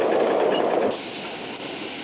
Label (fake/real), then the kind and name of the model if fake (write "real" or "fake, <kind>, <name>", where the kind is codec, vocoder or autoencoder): real